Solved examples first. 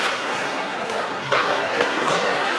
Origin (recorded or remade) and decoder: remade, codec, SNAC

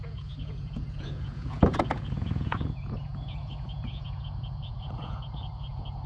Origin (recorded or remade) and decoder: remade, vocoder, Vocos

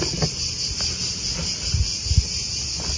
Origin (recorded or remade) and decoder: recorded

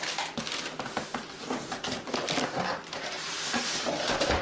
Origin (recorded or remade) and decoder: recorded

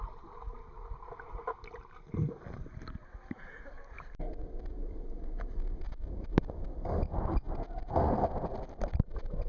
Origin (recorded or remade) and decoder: recorded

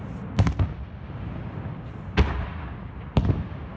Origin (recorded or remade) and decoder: recorded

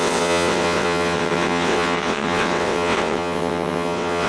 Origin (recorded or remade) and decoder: remade, vocoder, WaveNeXt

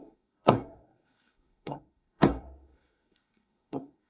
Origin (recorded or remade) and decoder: remade, codec, SNAC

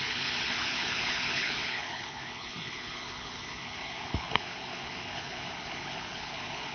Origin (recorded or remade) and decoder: remade, codec, HILCodec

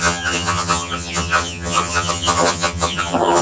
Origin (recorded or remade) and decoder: remade, vocoder, HiFi-GAN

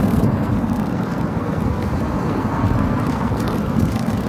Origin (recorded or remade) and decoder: remade, codec, SNAC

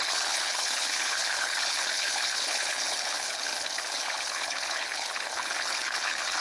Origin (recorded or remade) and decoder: remade, codec, HILCodec